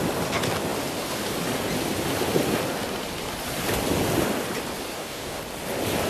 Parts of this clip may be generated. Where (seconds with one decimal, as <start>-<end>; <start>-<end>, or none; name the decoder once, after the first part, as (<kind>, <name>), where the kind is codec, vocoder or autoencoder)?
4.9-5.4 (codec, DAC)